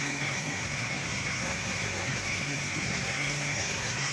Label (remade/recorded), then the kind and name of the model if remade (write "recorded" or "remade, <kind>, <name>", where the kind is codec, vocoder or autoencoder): remade, codec, SNAC